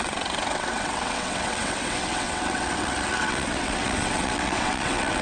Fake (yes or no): yes